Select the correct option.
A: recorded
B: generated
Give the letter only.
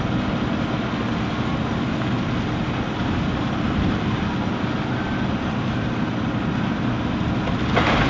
A